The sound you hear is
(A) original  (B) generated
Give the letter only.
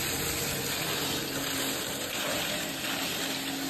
A